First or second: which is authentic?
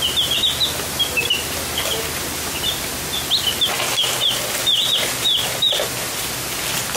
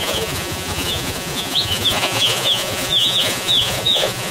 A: first